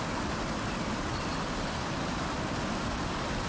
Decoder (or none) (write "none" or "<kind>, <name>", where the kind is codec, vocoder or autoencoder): none